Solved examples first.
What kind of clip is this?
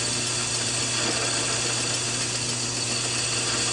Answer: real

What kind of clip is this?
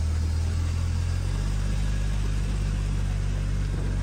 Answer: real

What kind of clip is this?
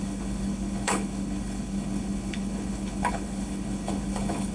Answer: fake